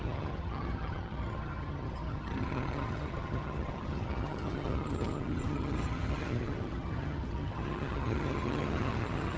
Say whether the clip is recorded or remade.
remade